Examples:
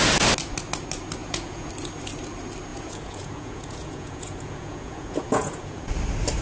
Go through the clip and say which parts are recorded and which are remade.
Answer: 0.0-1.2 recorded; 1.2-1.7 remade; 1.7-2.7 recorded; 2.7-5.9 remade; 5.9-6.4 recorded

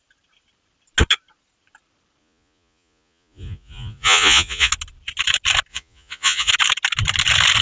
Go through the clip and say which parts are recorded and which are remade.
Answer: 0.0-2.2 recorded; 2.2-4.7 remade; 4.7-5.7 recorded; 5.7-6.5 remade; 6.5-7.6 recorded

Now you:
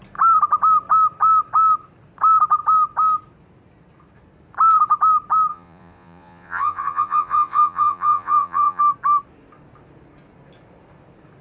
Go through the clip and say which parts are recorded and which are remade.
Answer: 0.0-5.5 recorded; 5.5-8.8 remade; 8.8-11.4 recorded

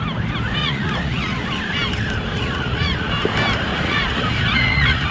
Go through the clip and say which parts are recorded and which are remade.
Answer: 0.0-0.6 recorded; 0.6-1.5 remade; 1.5-2.3 recorded; 2.3-3.1 remade; 3.1-3.7 recorded; 3.7-5.1 remade

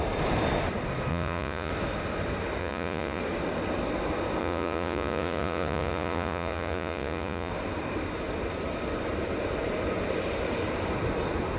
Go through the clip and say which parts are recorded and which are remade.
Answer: 0.0-1.1 recorded; 1.1-1.7 remade; 1.7-2.6 recorded; 2.6-3.2 remade; 3.2-4.4 recorded; 4.4-7.5 remade; 7.5-11.6 recorded